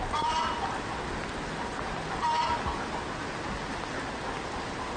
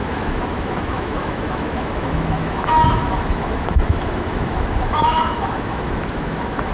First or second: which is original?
first